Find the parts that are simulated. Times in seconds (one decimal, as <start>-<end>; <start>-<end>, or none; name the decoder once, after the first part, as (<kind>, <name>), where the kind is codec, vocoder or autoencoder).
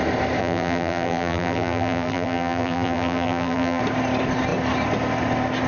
0.4-3.8 (vocoder, BigVGAN v2)